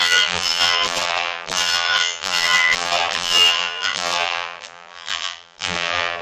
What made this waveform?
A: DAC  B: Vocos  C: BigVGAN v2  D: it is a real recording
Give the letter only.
C